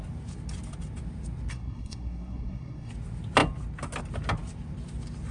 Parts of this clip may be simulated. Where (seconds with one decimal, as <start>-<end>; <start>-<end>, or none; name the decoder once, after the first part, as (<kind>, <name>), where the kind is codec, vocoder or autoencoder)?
1.5-2.9 (codec, SNAC)